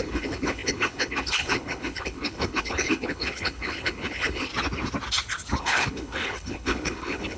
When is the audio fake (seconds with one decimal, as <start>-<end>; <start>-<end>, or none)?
0.0-4.5; 5.6-7.4